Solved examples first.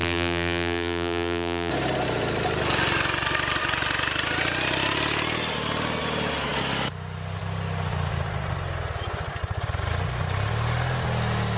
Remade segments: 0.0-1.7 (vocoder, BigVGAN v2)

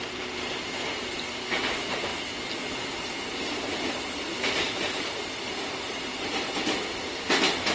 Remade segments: none

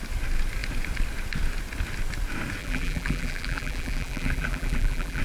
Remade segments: 2.6-5.2 (vocoder, BigVGAN v2)

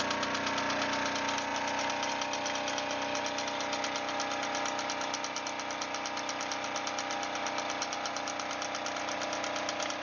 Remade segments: none

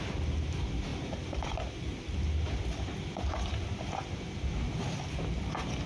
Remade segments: 0.9-2.0 (vocoder, BigVGAN v2)

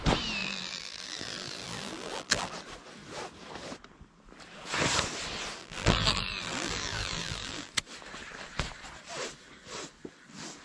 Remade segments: 0.4-2.5 (vocoder, BigVGAN v2); 5.6-7.7

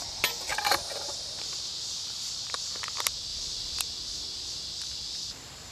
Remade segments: 0.5-1.7 (vocoder, BigVGAN v2)

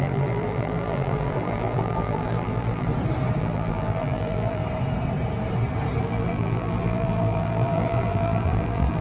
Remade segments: 0.0-2.9 (vocoder, BigVGAN v2); 3.4-4.6; 6.0-9.0